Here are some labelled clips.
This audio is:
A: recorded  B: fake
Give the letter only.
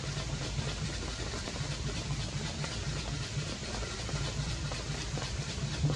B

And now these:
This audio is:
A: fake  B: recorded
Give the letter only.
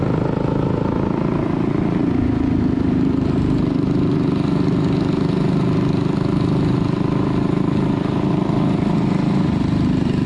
B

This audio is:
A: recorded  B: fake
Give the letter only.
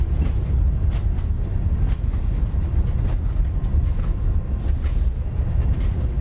A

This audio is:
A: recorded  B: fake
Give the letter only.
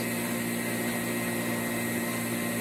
A